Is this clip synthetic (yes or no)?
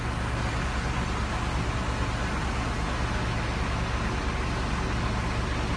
no